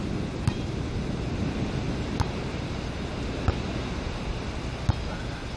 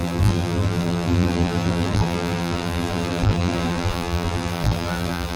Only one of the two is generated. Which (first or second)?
second